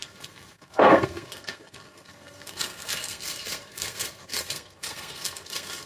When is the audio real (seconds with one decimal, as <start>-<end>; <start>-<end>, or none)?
none